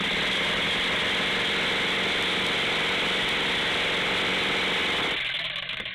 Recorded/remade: recorded